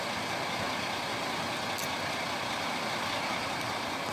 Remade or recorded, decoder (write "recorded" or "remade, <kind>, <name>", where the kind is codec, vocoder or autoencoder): recorded